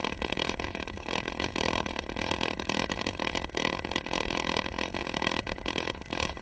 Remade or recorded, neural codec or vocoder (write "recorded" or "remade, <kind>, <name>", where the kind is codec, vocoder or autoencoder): remade, codec, HILCodec